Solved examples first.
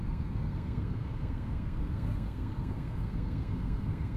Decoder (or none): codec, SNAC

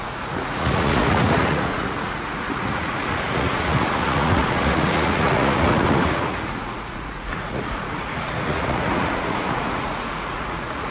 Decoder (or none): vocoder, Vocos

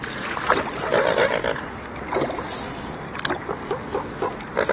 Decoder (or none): none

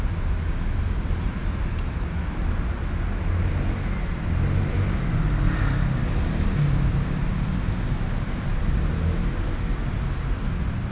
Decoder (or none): none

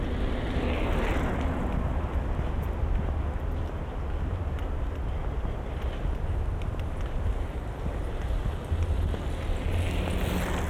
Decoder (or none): none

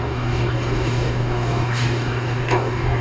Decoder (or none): codec, DAC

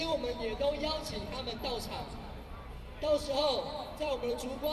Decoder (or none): vocoder, BigVGAN v2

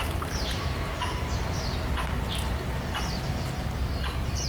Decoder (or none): vocoder, BigVGAN v2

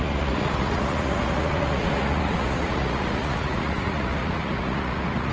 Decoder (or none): vocoder, Vocos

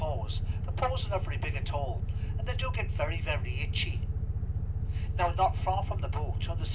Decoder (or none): none